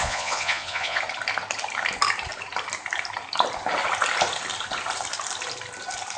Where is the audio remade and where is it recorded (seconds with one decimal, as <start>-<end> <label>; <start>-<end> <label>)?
0.0-1.0 remade; 1.0-6.2 recorded